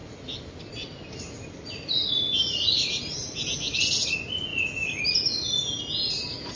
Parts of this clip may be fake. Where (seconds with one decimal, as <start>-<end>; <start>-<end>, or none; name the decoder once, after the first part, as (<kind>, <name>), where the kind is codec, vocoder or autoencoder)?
none